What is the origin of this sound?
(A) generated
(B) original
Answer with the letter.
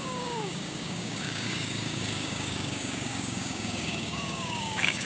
A